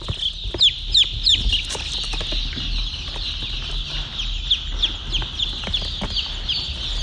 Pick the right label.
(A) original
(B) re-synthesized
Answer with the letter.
A